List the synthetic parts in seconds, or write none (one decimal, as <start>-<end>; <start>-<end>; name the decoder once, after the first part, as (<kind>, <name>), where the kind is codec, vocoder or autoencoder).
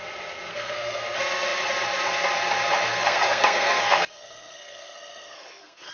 0.5-1.0 (codec, SNAC); 2.9-5.9